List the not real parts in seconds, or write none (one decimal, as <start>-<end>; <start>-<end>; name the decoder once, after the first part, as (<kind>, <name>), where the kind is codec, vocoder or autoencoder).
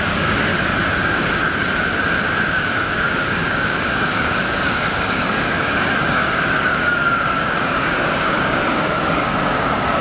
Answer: 0.0-0.5 (codec, DAC); 2.5-10.0